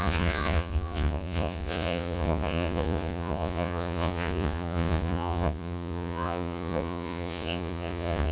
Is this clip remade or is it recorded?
remade